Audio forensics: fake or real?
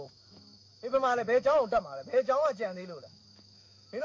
fake